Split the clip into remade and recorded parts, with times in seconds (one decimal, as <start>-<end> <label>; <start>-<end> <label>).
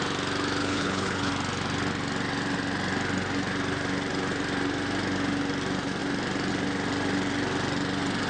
0.0-0.6 recorded; 0.6-1.3 remade; 1.3-8.3 recorded